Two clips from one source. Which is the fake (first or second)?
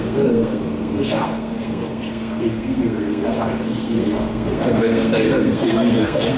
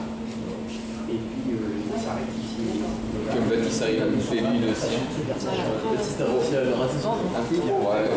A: first